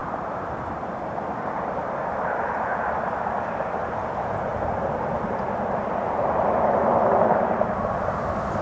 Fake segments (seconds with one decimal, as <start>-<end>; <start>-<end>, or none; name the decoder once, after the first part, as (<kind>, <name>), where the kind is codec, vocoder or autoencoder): 0.0-4.5 (vocoder, BigVGAN v2); 6.1-8.6